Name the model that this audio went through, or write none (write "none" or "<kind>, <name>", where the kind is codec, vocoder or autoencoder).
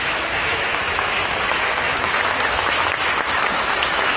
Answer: autoencoder, DAC-VAE